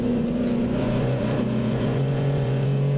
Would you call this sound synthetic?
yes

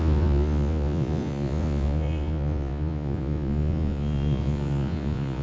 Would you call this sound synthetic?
yes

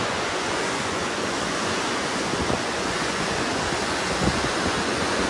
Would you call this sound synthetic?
yes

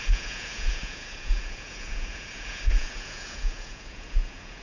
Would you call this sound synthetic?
yes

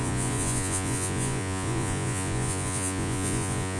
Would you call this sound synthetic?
yes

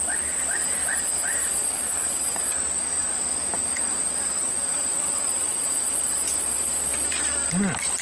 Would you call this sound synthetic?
no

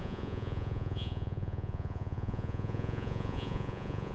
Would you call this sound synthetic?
yes